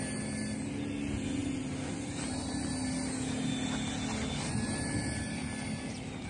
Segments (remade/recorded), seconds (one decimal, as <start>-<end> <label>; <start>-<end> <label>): 0.0-6.3 recorded